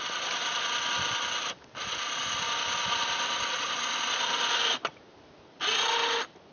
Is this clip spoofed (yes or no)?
no